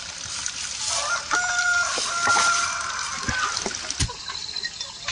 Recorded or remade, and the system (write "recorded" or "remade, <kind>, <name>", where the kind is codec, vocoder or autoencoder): recorded